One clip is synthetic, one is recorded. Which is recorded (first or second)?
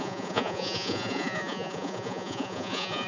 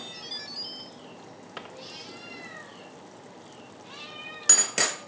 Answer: second